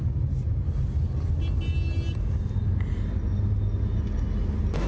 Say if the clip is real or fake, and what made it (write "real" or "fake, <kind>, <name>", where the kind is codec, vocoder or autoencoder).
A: real